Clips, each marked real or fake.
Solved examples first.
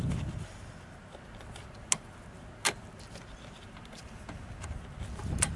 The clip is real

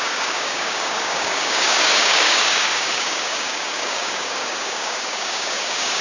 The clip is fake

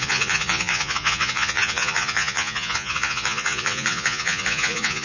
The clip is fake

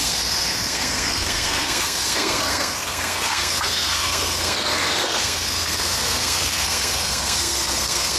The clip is fake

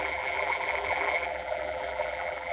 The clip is fake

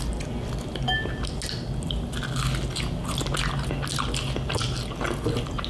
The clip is real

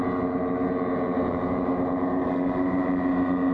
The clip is real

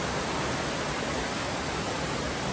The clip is real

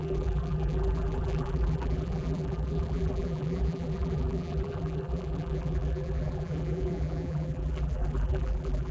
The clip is fake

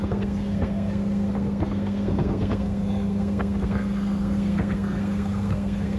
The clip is fake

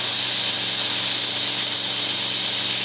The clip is real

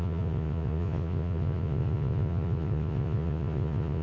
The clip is fake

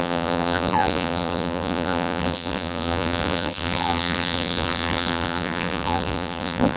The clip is fake